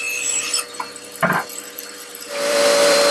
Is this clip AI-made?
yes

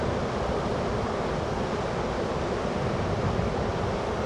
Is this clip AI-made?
no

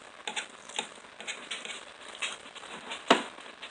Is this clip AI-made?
no